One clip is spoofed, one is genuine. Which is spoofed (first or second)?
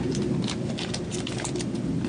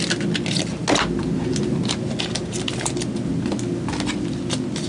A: first